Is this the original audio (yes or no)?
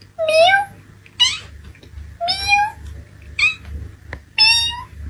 yes